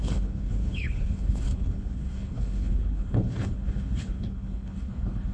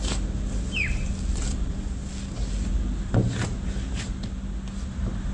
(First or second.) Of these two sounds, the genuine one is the second